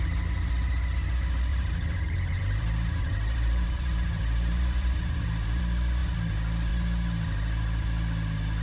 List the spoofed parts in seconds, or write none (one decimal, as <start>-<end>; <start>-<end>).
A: 1.5-5.6